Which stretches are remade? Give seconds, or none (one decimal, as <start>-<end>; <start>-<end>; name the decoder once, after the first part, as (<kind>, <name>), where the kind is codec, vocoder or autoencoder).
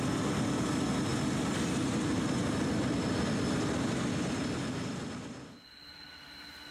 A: none